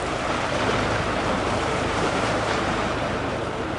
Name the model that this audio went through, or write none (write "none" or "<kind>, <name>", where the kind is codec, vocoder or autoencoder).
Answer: vocoder, BigVGAN v2